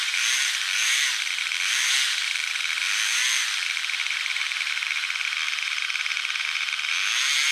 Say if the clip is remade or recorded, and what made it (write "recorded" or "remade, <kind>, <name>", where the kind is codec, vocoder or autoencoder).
remade, vocoder, BigVGAN v2